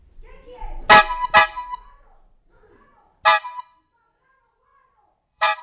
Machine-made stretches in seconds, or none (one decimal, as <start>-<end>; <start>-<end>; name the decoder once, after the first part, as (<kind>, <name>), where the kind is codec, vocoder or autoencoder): 4.7-5.6 (vocoder, BigVGAN v2)